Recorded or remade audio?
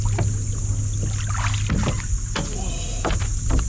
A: recorded